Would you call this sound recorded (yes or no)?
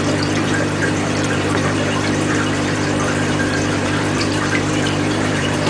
no